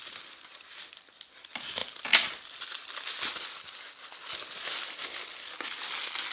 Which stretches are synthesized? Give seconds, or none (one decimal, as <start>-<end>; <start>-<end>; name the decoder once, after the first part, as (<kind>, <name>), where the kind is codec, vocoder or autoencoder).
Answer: none